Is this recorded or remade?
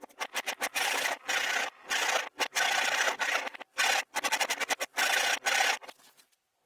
recorded